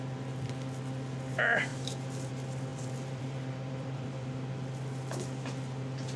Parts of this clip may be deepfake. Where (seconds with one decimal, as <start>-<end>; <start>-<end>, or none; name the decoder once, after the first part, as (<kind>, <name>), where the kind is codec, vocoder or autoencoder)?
2.7-4.3 (vocoder, BigVGAN v2)